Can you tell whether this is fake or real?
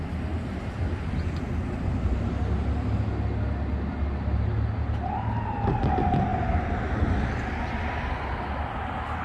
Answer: real